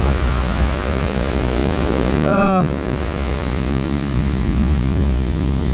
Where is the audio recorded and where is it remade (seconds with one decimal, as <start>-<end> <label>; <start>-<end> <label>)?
0.0-5.7 remade